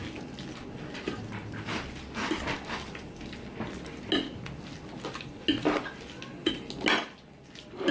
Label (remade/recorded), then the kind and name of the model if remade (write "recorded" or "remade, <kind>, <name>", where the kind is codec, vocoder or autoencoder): recorded